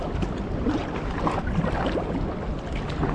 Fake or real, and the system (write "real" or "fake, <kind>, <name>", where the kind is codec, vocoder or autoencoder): real